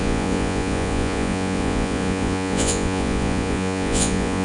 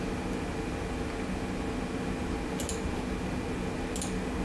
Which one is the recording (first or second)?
second